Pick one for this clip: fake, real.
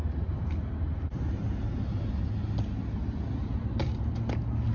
real